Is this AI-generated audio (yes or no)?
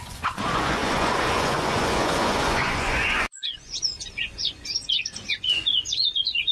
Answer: yes